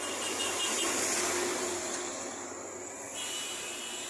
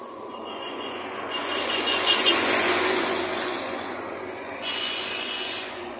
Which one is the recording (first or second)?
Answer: first